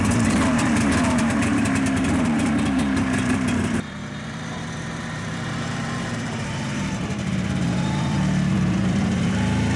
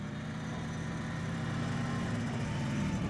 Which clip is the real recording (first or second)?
second